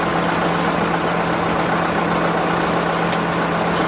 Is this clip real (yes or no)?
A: yes